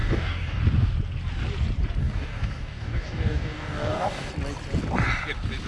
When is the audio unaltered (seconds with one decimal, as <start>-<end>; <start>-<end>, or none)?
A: 0.6-2.0; 4.3-5.7